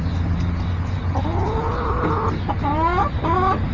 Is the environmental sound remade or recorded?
recorded